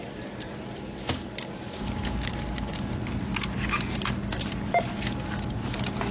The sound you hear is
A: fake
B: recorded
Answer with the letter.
B